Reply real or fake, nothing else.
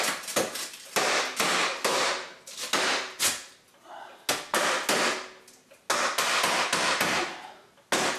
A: real